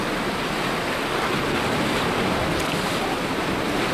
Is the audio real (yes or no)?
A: yes